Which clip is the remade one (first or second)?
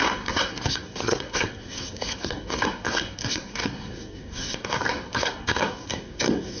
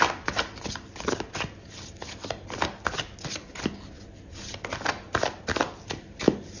first